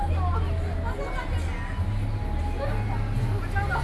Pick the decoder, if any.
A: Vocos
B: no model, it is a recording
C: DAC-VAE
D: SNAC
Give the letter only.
B